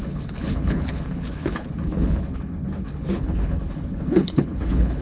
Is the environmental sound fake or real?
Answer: fake